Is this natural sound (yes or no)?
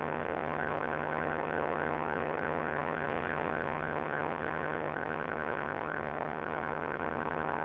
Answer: no